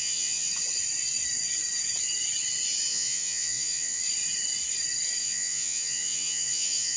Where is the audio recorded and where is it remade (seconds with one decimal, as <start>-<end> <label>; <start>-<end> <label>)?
0.0-0.5 remade; 0.5-2.9 recorded; 2.9-4.0 remade; 4.0-5.2 recorded; 5.2-7.0 remade

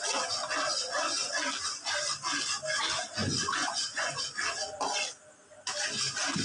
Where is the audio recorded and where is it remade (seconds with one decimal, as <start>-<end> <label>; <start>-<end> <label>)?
0.0-3.2 recorded; 3.2-4.2 remade; 4.2-6.4 recorded

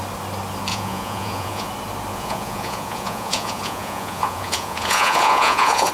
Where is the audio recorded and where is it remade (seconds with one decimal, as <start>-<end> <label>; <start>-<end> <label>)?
0.0-0.7 recorded; 0.7-1.7 remade; 1.7-2.1 recorded; 2.1-5.9 remade

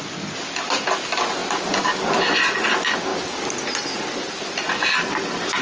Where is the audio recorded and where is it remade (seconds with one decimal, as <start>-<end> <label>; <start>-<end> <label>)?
0.0-5.6 recorded

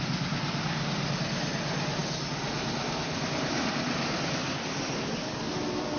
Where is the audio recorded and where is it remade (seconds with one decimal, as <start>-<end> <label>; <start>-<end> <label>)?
0.0-6.0 recorded

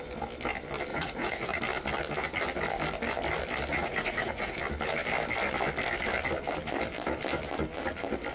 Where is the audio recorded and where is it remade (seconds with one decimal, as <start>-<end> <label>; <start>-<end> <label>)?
0.0-0.9 recorded; 0.9-1.6 remade; 1.6-3.7 recorded; 3.7-4.6 remade; 4.6-8.3 recorded

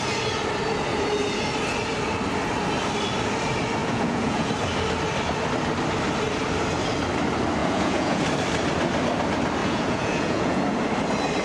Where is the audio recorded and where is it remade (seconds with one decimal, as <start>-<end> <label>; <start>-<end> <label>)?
0.0-3.8 recorded; 3.8-4.5 remade; 4.5-7.6 recorded; 7.6-8.2 remade; 8.2-9.6 recorded; 9.6-10.6 remade; 10.6-11.4 recorded